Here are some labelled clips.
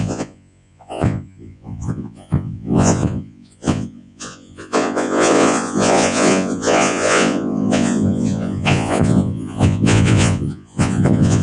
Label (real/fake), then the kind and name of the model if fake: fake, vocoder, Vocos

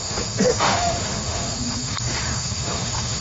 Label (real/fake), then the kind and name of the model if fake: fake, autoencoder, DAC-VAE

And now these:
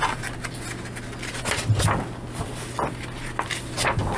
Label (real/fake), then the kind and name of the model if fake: real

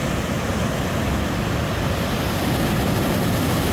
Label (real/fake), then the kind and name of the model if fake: fake, vocoder, BigVGAN v2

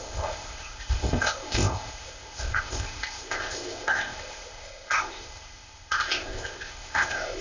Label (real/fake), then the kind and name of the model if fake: fake, codec, ZipCodec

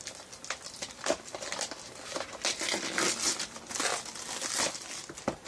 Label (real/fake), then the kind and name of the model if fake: real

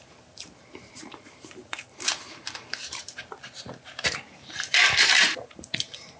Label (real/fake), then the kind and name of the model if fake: fake, vocoder, BigVGAN v2